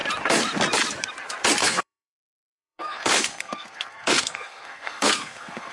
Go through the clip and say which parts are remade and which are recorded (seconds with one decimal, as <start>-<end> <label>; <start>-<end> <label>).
0.0-1.6 recorded; 1.6-5.7 remade